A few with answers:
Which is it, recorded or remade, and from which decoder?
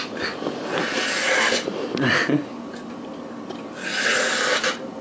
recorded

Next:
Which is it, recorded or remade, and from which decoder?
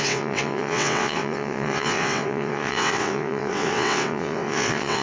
remade, vocoder, WaveNeXt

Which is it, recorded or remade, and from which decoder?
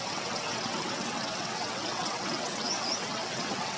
remade, vocoder, WaveNeXt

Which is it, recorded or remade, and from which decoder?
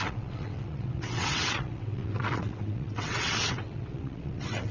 remade, vocoder, WaveNeXt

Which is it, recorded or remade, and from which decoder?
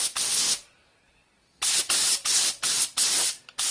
recorded